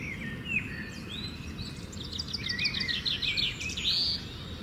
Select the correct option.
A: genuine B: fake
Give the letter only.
A